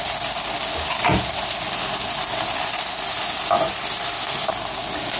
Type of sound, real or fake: real